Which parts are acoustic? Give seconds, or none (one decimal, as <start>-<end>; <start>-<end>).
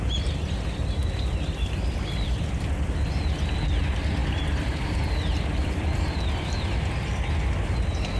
0.0-1.0; 3.2-4.2; 6.0-8.2